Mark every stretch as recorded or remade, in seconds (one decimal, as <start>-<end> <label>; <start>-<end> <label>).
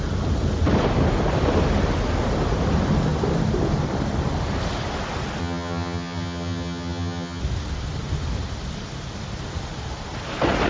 0.0-5.4 recorded; 5.4-7.4 remade; 7.4-10.7 recorded